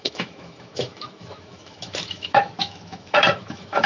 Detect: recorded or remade remade